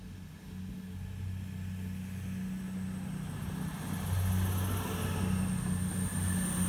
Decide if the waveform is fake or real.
real